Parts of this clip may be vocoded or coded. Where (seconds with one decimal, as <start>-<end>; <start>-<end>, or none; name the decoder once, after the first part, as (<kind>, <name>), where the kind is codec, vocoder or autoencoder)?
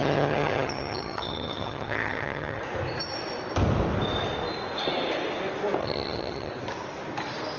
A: 0.0-2.6 (vocoder, HiFi-GAN); 5.8-6.5